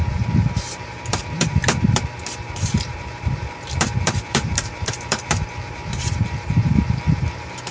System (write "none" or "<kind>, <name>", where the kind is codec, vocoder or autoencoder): vocoder, BigVGAN v2